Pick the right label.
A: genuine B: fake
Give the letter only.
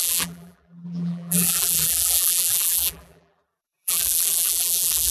B